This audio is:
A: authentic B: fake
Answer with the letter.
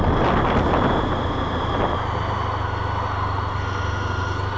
A